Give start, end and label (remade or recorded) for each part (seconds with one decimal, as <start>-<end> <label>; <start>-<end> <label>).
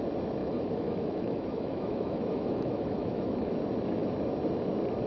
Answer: 0.0-0.4 recorded; 0.4-3.5 remade; 3.5-5.1 recorded